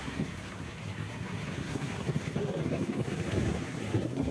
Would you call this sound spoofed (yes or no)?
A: yes